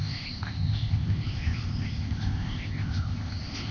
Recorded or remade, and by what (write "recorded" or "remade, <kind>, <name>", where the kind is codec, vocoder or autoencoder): remade, codec, ZipCodec